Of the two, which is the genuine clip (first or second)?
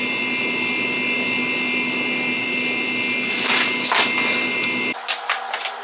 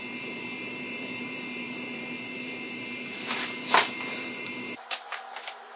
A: first